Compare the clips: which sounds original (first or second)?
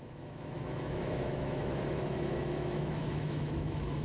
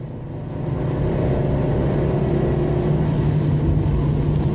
second